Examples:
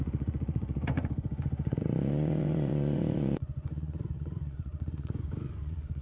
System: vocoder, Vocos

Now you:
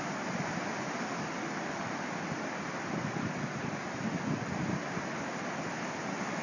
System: none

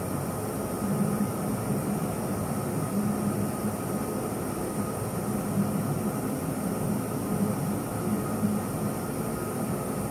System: none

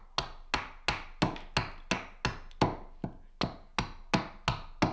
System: none